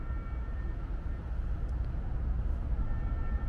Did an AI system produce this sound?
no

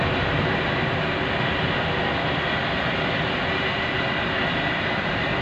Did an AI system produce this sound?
no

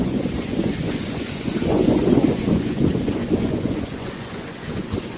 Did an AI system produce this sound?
yes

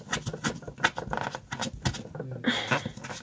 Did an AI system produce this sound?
no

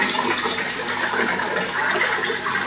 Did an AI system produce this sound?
yes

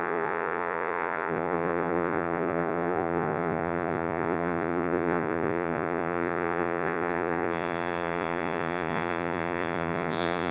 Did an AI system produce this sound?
yes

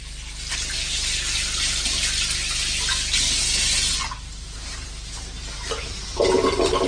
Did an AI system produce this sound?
no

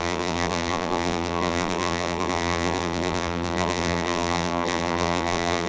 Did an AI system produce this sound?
yes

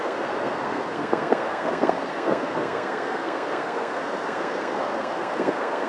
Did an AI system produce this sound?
yes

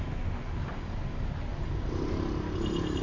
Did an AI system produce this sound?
no